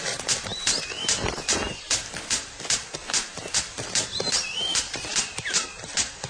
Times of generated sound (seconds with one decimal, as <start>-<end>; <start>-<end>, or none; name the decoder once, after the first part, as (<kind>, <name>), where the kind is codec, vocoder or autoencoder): 0.0-6.3 (vocoder, BigVGAN v2)